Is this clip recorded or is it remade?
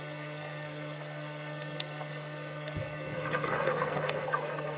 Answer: remade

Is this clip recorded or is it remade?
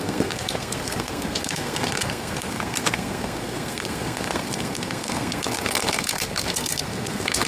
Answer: remade